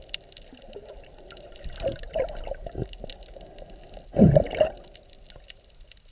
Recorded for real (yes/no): yes